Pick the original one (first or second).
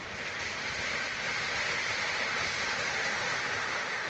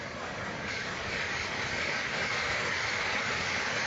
first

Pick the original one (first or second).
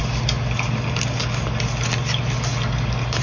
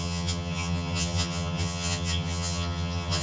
first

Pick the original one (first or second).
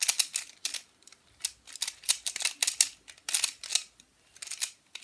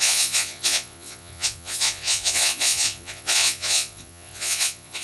first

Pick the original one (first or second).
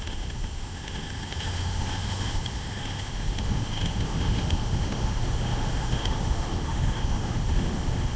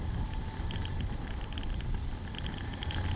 second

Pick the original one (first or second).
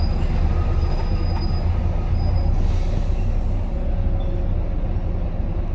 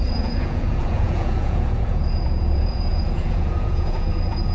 first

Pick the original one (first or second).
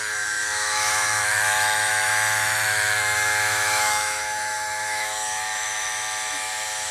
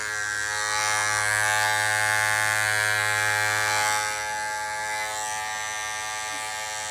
second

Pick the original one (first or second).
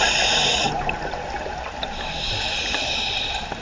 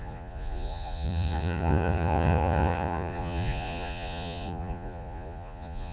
first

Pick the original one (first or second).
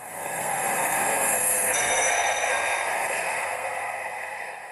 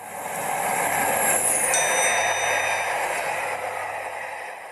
second